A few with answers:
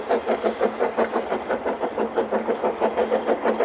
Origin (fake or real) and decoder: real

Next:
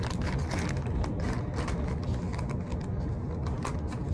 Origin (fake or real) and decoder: real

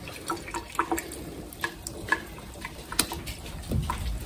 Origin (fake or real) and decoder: fake, vocoder, BigVGAN v2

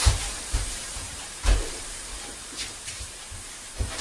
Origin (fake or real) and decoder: fake, vocoder, BigVGAN v2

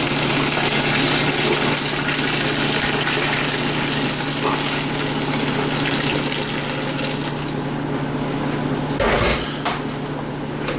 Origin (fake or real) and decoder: real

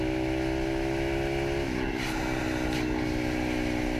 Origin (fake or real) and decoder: real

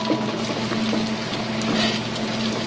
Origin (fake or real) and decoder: real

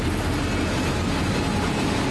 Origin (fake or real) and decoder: real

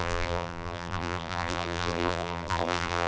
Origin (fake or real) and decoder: fake, vocoder, BigVGAN v2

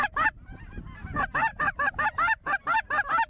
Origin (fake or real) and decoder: fake, vocoder, BigVGAN v2